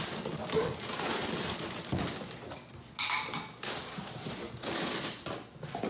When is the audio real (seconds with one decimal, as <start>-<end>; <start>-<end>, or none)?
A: 0.0-5.9